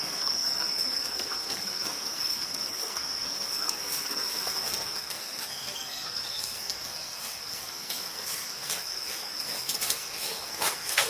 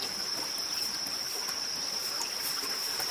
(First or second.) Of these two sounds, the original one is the second